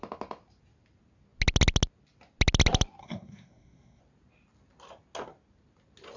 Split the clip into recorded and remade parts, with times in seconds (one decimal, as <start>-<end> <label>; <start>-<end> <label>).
0.0-3.0 recorded; 3.0-4.0 remade; 4.0-6.2 recorded